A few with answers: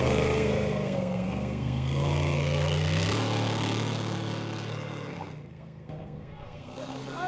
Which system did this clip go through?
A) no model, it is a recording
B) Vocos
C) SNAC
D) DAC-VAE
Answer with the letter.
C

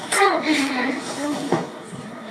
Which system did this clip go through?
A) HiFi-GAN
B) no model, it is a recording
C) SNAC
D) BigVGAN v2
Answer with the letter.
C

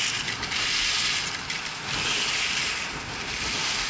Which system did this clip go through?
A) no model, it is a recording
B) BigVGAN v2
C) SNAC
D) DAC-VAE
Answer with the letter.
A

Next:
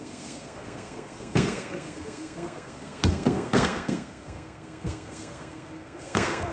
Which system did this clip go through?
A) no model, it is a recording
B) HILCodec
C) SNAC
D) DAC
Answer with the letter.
C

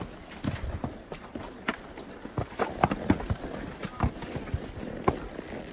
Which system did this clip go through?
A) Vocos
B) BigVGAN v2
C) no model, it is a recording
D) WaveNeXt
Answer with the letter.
C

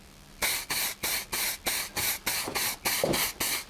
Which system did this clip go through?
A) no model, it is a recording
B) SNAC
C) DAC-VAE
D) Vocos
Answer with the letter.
A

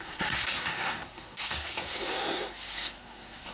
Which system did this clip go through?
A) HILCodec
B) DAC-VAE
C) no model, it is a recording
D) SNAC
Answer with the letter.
D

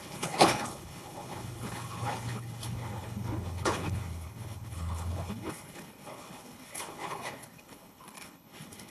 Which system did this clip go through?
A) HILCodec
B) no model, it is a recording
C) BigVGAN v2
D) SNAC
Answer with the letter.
A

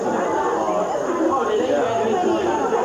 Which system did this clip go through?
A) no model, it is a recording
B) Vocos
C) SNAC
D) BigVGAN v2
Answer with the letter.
A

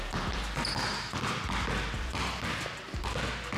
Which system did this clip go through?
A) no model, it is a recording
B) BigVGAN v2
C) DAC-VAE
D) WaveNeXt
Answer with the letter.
A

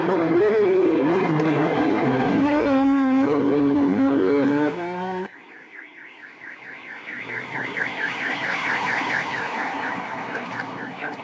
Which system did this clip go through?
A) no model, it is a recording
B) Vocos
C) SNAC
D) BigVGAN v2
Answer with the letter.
C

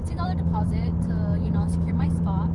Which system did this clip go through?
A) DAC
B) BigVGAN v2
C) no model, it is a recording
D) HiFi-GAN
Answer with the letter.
B